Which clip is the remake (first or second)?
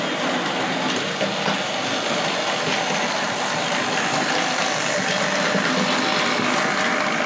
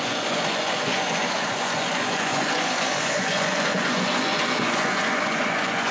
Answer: second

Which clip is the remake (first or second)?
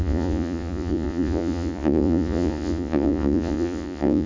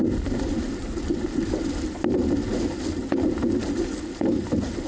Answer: first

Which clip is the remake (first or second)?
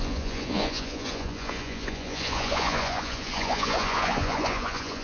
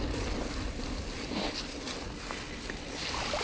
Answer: first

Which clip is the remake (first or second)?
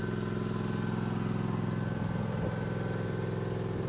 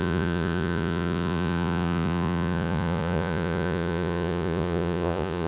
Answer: second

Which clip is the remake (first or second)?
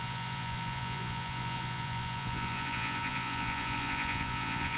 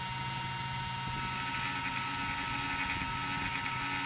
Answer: first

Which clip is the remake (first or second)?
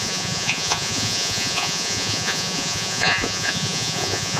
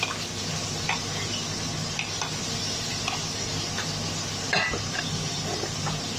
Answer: first